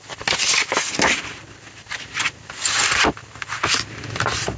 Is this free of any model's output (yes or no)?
yes